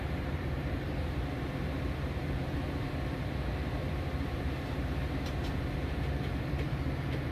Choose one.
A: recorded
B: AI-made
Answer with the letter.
B